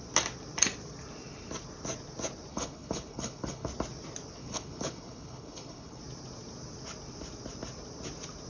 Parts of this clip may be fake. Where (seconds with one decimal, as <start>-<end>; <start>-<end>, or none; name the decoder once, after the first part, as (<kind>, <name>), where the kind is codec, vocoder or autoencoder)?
2.5-3.7 (codec, HILCodec); 4.4-6.0